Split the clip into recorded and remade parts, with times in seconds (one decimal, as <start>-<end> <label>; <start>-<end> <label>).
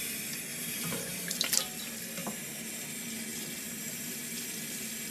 0.0-0.5 recorded; 0.5-1.4 remade; 1.4-2.2 recorded; 2.2-2.7 remade; 2.7-3.3 recorded; 3.3-4.2 remade; 4.2-5.1 recorded